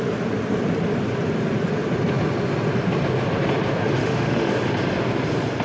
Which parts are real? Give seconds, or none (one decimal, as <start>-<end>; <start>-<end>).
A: 0.0-4.0; 4.5-5.6